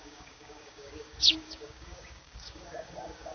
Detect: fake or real fake